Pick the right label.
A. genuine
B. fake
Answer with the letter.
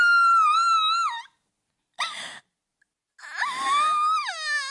A